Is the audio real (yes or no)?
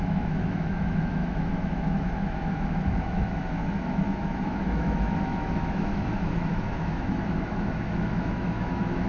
no